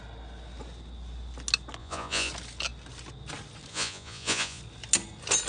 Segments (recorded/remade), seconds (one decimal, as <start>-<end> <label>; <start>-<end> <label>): 0.0-1.8 recorded; 1.8-2.3 remade; 2.3-3.7 recorded; 3.7-4.6 remade; 4.6-5.5 recorded